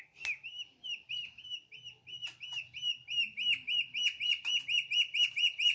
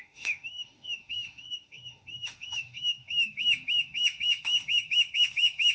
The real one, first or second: first